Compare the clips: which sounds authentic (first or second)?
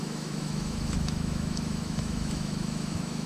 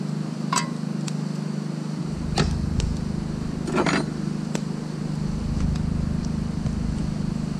second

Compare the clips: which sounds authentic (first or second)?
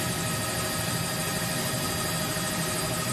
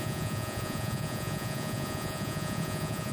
first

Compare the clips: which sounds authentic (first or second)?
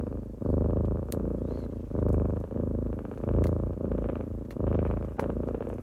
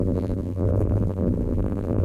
first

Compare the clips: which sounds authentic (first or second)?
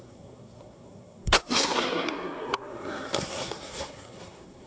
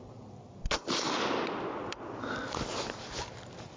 second